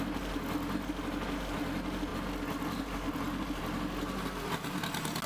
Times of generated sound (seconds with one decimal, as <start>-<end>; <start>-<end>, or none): none